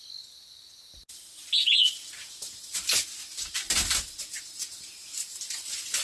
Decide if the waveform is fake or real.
real